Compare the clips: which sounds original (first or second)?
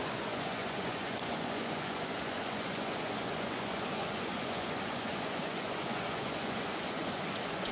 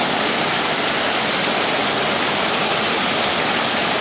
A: second